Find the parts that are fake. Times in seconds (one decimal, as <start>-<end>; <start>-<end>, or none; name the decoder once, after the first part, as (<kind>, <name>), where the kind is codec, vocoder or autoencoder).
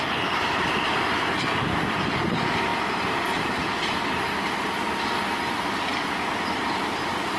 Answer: none